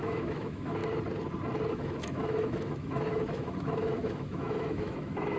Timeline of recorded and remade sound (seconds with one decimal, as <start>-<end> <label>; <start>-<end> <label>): 0.0-0.8 remade; 0.8-1.7 recorded; 1.7-5.4 remade